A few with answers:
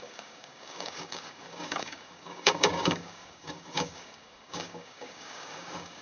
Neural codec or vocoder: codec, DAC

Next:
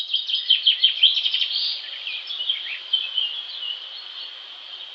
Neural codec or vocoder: none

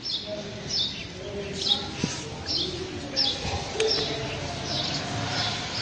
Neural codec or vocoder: none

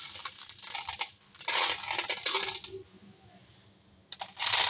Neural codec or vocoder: none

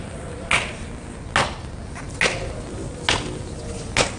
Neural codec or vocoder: none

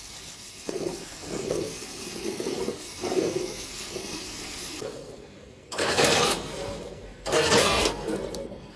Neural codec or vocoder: codec, SNAC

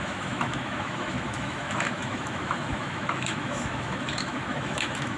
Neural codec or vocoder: autoencoder, DAC-VAE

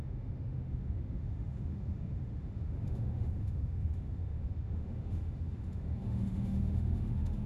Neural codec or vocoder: autoencoder, DAC-VAE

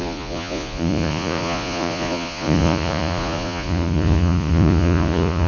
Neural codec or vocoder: vocoder, Vocos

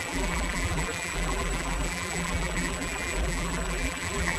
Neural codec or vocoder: vocoder, BigVGAN v2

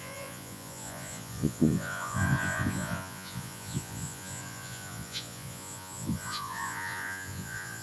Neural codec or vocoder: vocoder, Vocos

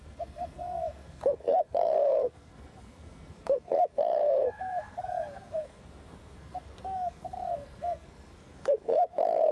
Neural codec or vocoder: codec, SNAC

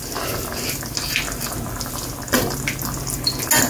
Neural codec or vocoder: none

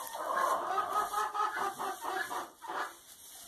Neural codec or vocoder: none